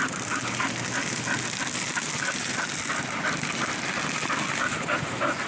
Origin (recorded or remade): recorded